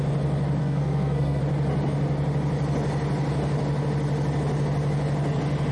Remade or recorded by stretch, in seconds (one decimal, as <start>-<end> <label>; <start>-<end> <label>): 0.0-0.6 recorded; 0.6-1.4 remade; 1.4-5.7 recorded